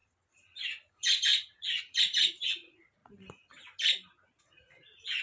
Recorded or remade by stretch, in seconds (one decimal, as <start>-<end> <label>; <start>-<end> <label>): 0.0-0.9 recorded; 0.9-3.0 remade; 3.0-4.4 recorded; 4.4-5.2 remade